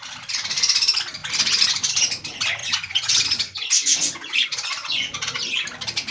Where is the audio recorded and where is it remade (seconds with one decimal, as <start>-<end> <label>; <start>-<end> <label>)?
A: 0.0-1.2 recorded; 1.2-1.9 remade; 1.9-2.6 recorded; 2.6-5.5 remade; 5.5-6.1 recorded